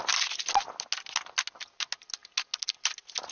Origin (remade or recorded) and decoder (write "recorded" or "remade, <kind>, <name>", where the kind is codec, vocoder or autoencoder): recorded